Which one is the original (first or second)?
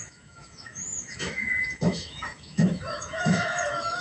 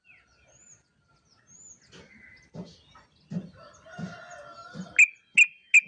second